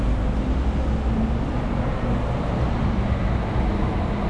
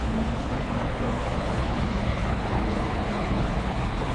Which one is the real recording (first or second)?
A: first